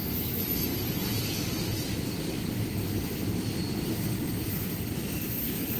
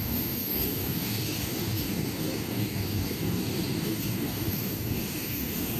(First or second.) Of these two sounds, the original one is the first